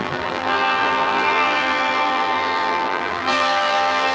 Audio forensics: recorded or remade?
remade